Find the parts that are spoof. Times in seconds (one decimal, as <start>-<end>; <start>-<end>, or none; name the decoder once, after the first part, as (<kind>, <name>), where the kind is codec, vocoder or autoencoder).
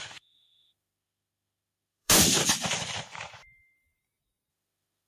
0.0-2.4 (autoencoder, DAC-VAE); 4.5-5.1